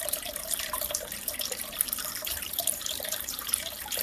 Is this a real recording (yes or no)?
no